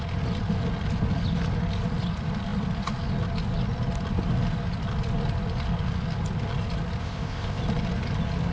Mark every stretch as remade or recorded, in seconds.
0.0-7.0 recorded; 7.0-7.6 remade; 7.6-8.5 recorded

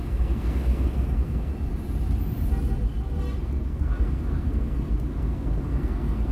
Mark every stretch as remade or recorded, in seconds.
0.0-1.5 remade; 1.5-3.4 recorded; 3.4-6.3 remade

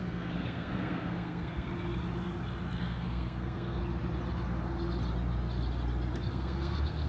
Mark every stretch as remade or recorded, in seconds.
0.0-1.7 remade; 1.7-2.8 recorded; 2.8-3.8 remade; 3.8-6.3 recorded; 6.3-7.1 remade

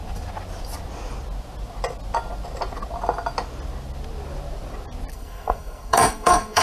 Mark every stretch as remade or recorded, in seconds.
0.0-5.1 recorded; 5.1-6.6 remade

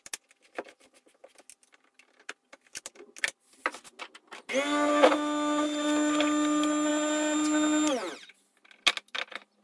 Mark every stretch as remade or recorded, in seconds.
0.0-9.6 recorded

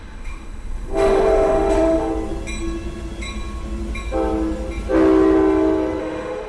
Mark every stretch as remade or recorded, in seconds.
0.0-2.1 remade; 2.1-6.0 recorded; 6.0-6.5 remade

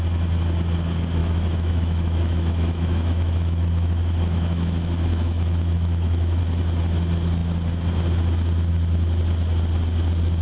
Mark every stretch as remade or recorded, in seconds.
0.0-1.2 recorded; 1.2-6.4 remade; 6.4-10.4 recorded

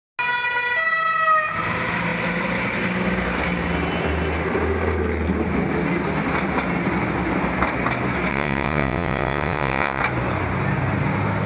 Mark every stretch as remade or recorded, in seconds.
0.0-8.3 recorded; 8.3-10.0 remade; 10.0-11.5 recorded